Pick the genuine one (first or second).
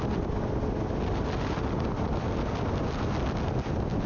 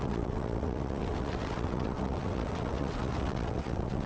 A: first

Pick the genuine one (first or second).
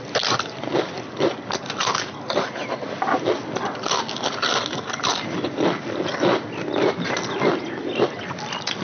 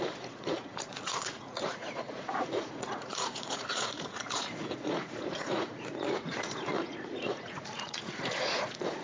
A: first